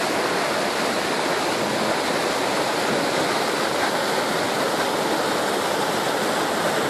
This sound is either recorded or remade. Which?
recorded